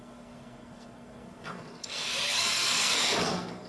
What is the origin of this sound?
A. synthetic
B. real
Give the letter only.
A